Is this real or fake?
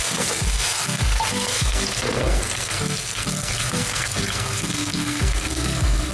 fake